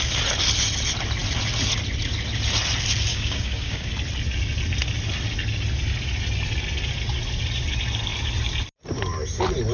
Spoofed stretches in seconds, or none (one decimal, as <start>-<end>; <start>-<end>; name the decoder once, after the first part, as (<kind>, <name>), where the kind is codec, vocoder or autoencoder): 3.1-3.9 (codec, DAC)